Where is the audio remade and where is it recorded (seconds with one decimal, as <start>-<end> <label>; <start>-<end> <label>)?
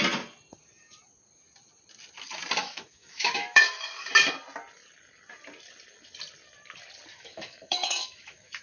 0.0-2.6 recorded; 2.6-4.1 remade; 4.1-7.1 recorded; 7.1-8.6 remade